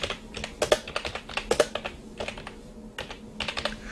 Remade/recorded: recorded